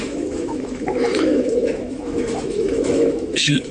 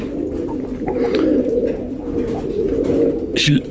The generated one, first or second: first